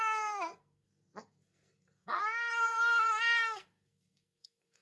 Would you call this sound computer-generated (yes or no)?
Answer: yes